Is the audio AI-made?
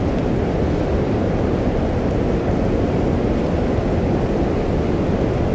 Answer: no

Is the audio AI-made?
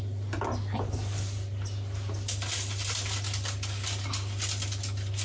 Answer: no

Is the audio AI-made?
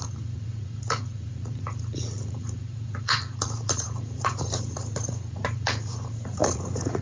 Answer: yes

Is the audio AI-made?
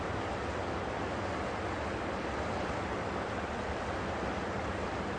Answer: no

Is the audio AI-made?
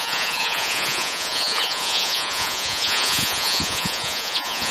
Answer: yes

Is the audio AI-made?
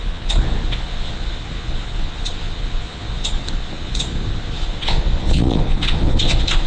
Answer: yes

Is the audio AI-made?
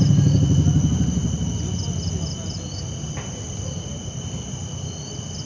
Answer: no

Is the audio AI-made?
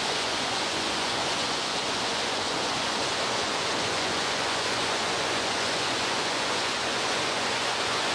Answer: yes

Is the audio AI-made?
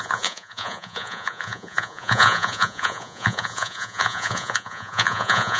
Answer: yes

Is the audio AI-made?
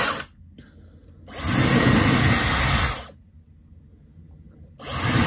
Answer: no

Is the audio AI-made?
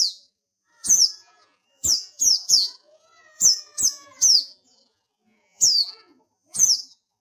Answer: yes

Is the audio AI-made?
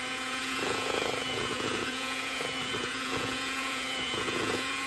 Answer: yes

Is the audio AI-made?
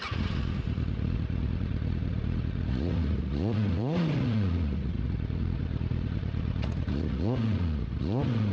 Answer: yes